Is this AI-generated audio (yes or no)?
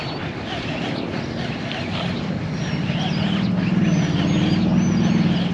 no